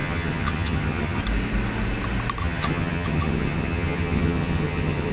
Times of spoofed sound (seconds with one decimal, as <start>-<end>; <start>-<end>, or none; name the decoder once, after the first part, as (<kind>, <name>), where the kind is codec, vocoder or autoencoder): 0.0-1.2 (vocoder, HiFi-GAN); 2.4-5.1